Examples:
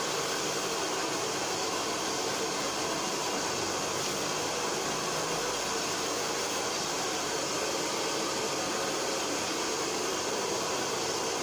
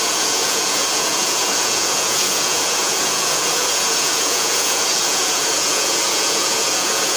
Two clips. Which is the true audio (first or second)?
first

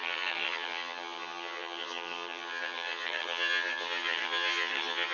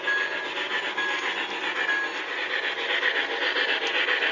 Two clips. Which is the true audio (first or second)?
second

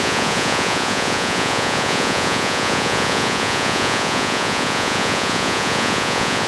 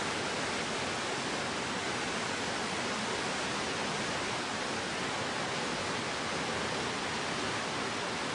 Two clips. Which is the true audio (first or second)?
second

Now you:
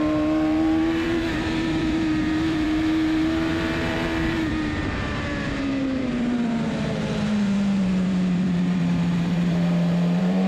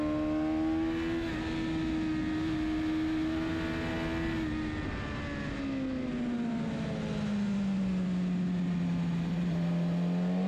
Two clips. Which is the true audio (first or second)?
second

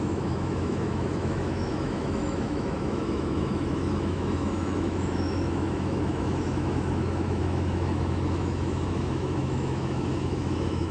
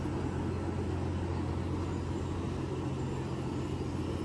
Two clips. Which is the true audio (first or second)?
second